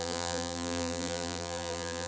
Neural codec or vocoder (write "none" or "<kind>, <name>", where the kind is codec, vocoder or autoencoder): vocoder, BigVGAN v2